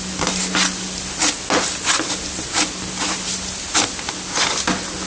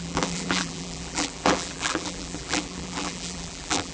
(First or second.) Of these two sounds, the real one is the first